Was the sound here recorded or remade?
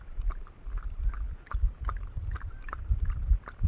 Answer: recorded